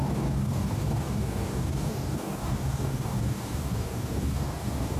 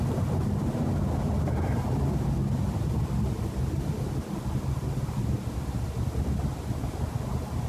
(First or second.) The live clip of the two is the second